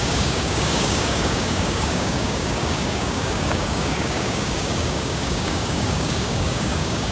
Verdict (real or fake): fake